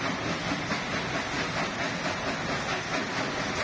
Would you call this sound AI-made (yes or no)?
no